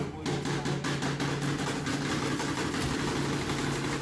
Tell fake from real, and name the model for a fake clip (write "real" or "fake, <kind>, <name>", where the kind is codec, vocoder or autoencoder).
real